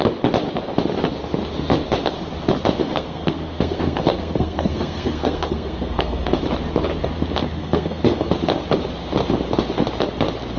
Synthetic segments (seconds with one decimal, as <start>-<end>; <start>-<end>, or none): 2.8-6.4; 7.6-8.3